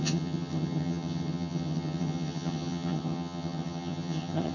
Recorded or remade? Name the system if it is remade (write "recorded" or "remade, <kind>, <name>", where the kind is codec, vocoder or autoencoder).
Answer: remade, vocoder, HiFi-GAN